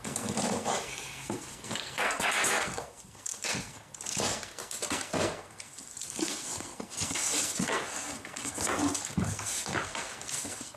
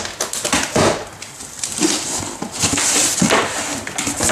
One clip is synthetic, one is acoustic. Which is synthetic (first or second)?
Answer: first